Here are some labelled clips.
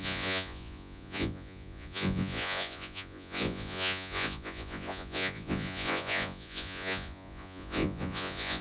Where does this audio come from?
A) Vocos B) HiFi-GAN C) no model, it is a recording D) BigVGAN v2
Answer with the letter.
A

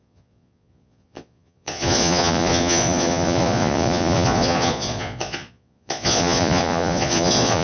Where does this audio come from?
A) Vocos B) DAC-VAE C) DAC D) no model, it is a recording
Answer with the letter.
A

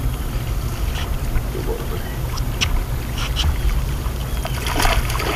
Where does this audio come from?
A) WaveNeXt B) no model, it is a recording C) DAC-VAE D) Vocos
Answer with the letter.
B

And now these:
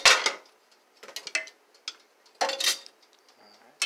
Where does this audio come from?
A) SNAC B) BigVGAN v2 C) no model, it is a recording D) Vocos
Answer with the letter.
C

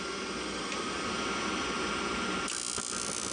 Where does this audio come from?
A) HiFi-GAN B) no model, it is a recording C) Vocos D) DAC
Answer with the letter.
B